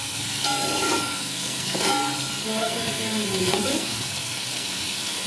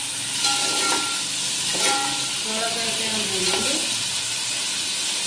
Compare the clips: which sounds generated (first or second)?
first